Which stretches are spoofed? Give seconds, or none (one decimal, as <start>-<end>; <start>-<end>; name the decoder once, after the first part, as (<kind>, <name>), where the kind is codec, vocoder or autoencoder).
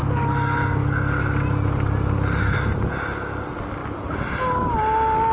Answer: none